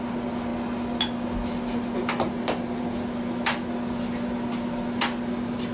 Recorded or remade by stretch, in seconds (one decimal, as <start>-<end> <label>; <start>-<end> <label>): 0.0-5.7 recorded